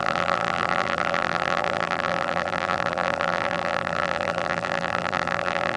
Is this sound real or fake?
fake